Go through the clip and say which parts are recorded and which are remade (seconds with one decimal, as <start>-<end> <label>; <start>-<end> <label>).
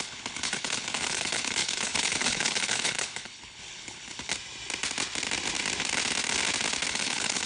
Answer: 0.0-4.3 remade; 4.3-6.9 recorded; 6.9-7.5 remade